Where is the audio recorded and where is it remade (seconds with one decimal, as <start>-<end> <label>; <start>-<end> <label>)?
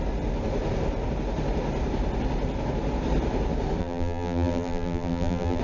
0.0-3.8 recorded; 3.8-5.6 remade